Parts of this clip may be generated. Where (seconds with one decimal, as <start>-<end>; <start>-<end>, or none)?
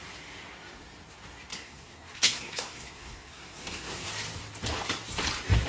1.5-4.1